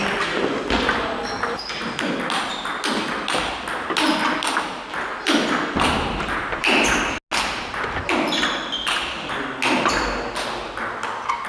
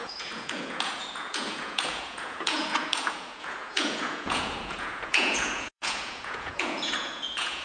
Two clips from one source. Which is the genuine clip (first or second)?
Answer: first